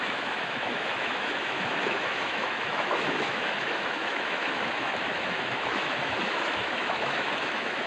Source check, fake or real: fake